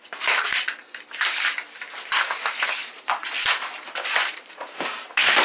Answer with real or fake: real